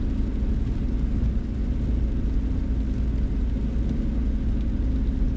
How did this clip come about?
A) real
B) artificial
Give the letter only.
A